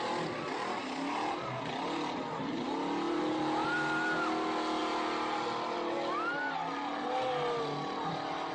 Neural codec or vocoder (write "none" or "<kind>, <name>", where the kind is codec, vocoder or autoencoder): none